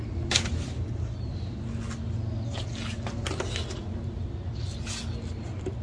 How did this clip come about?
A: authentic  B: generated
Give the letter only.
A